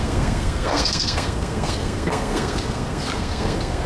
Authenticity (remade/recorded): remade